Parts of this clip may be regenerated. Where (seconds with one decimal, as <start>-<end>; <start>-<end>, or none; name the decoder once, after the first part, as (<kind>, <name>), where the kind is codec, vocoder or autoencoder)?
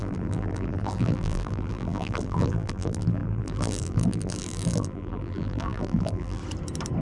0.0-6.4 (vocoder, BigVGAN v2)